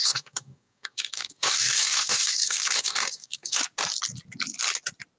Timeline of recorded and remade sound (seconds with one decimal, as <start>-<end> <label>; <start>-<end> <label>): 0.0-3.6 remade; 3.6-5.2 recorded